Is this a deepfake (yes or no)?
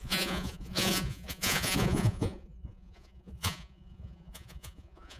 yes